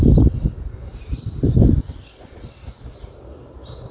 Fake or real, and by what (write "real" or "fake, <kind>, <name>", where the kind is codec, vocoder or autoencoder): real